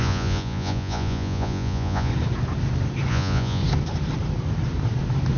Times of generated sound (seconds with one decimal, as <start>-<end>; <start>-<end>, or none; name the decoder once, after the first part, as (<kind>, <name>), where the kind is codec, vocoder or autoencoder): 0.0-2.1 (vocoder, Vocos); 3.1-3.6